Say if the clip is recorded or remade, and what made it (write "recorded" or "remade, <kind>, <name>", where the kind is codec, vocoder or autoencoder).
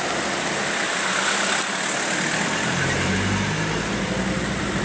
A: recorded